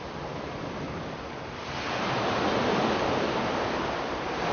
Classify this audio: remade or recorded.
recorded